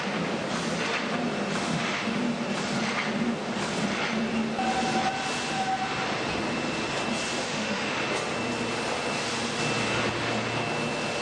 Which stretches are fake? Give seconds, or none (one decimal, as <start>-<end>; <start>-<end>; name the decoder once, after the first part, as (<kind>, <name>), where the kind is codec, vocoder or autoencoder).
1.6-2.2 (autoencoder, DAC-VAE); 7.4-8.0